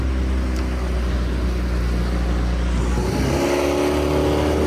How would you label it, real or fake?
real